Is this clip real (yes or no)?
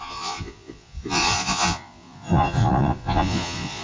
no